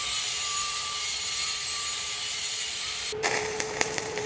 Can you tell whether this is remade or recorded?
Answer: remade